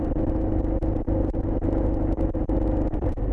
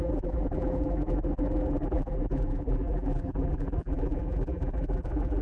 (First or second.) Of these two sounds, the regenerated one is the second